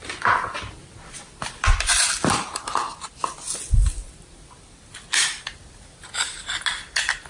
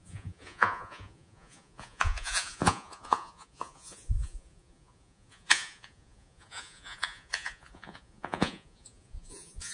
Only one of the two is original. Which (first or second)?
first